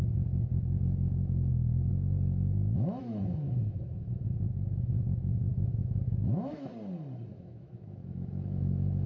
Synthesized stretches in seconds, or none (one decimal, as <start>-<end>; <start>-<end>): 0.0-6.7; 7.3-9.1